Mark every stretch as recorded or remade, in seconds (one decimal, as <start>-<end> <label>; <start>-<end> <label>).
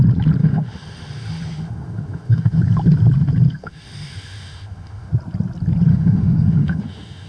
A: 0.0-0.4 recorded; 0.4-2.6 remade; 2.6-3.6 recorded; 3.6-5.1 remade; 5.1-5.9 recorded; 5.9-7.3 remade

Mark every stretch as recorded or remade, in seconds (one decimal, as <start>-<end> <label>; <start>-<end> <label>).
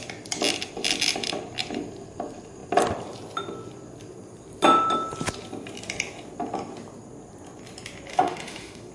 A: 0.0-8.1 recorded; 8.1-8.9 remade